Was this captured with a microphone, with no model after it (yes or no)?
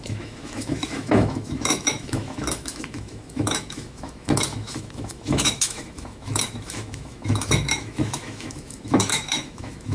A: no